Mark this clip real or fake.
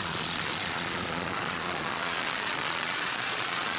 fake